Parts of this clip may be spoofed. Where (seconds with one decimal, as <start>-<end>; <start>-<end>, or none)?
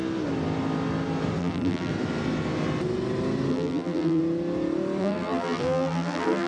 1.4-1.9; 3.5-4.2; 5.0-6.5